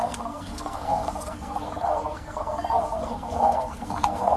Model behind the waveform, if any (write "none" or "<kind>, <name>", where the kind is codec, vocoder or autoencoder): codec, SNAC